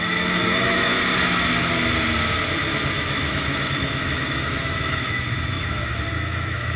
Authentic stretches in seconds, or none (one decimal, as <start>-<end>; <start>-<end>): 0.9-2.9